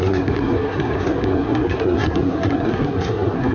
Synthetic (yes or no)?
yes